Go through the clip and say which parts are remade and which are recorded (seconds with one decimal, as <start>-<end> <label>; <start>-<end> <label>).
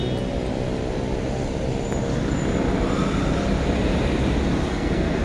0.0-4.7 recorded; 4.7-5.2 remade